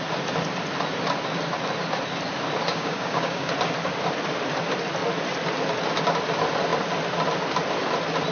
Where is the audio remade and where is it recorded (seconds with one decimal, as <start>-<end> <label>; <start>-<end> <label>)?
0.0-2.7 recorded; 2.7-3.5 remade; 3.5-8.3 recorded